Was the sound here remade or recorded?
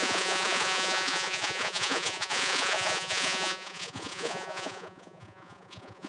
remade